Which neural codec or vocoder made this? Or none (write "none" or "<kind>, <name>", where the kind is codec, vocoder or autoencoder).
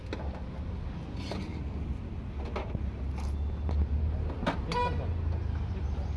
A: none